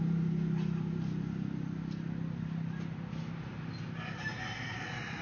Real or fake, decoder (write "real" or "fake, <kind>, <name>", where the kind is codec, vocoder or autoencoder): real